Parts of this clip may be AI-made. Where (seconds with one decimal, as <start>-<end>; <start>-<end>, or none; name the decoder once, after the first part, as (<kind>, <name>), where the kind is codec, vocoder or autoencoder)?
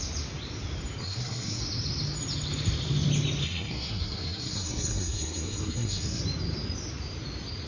1.0-1.6 (codec, SNAC); 3.4-6.2